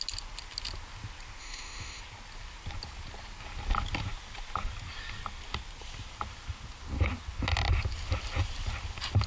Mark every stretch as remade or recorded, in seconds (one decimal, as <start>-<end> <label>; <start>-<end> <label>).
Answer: 0.0-1.4 recorded; 1.4-2.0 remade; 2.0-9.3 recorded

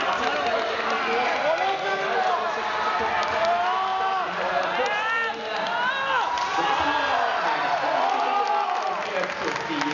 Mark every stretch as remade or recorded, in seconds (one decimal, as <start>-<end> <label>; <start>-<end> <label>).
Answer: 0.0-9.9 recorded